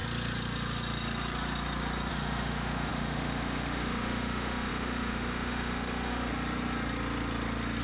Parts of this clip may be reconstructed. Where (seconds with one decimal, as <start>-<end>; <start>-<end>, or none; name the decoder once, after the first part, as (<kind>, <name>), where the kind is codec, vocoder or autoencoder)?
2.1-6.3 (autoencoder, DAC-VAE)